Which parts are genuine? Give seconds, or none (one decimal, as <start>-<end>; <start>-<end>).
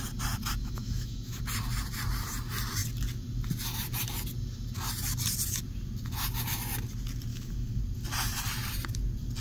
0.0-0.6; 1.4-7.3; 7.8-9.4